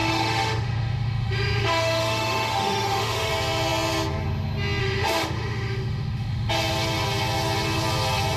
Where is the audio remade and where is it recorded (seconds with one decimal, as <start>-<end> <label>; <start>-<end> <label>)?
0.0-3.3 remade; 3.3-4.8 recorded; 4.8-6.5 remade; 6.5-8.4 recorded